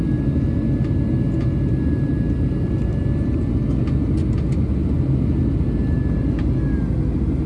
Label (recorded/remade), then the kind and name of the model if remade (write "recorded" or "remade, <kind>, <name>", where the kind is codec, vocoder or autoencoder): recorded